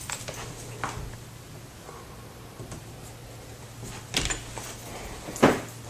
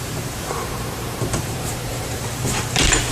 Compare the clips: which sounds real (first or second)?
first